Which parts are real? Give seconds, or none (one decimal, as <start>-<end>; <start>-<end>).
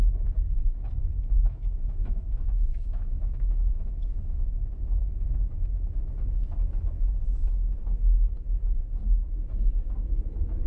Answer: 0.0-1.0; 4.6-10.7